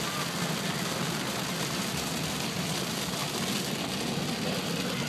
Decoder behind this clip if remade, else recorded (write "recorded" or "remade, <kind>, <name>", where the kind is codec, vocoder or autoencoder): recorded